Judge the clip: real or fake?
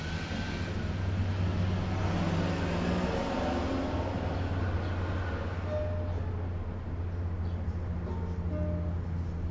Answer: real